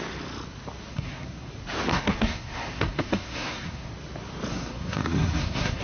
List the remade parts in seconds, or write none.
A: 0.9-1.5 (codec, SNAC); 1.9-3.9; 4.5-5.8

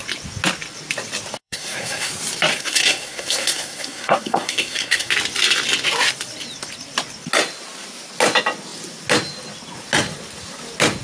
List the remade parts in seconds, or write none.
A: 1.4-2.1 (codec, SNAC); 2.5-5.1

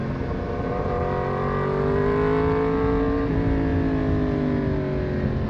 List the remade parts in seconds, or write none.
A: none

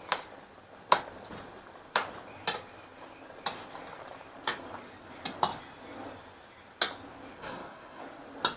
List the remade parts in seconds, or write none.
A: 7.4-8.0 (codec, SNAC)

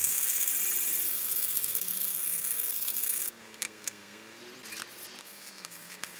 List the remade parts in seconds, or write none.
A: 0.0-0.5 (codec, SNAC); 1.1-4.4; 5.2-6.2